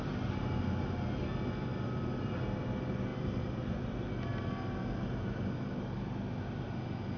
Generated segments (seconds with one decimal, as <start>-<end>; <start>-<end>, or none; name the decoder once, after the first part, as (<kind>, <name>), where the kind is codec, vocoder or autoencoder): 1.7-2.4 (vocoder, BigVGAN v2); 3.1-4.4